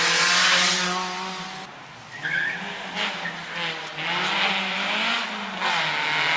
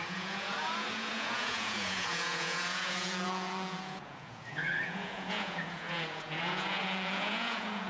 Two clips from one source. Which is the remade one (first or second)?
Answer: second